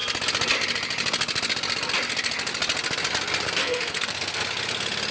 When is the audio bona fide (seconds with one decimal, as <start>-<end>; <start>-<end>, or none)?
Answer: 0.0-3.6; 4.4-5.1

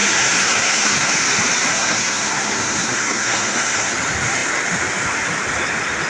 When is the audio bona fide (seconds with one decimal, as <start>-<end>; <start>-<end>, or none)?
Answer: 1.1-1.7; 3.9-6.1

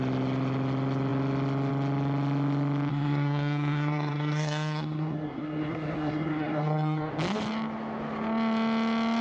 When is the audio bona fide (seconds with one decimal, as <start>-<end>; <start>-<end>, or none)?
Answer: 0.0-2.9; 7.1-9.2

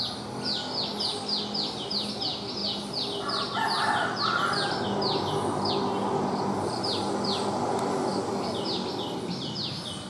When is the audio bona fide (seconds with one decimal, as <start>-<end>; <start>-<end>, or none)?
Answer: 0.0-10.1

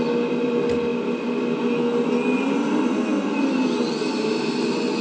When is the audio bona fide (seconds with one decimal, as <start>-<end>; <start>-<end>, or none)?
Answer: 0.0-5.0